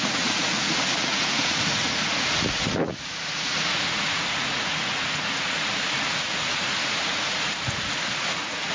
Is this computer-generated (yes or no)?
yes